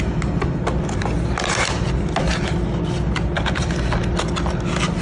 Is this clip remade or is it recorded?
recorded